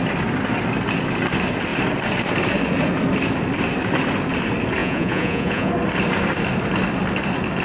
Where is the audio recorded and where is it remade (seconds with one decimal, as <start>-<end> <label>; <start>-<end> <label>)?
0.0-4.8 recorded; 4.8-5.7 remade; 5.7-7.6 recorded